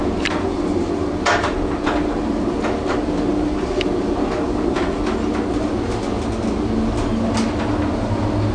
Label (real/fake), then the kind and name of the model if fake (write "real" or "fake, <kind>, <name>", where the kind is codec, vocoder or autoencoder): real